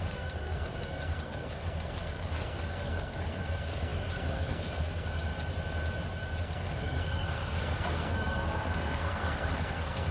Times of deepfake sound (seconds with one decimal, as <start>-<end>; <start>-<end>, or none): 0.0-5.3; 6.4-10.1